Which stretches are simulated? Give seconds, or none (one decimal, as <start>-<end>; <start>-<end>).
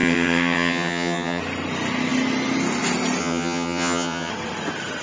0.0-1.4; 3.2-4.3